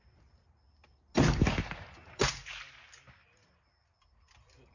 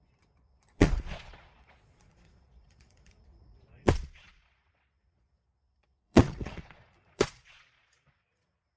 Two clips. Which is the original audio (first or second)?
first